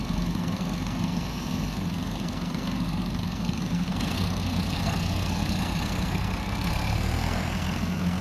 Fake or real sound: fake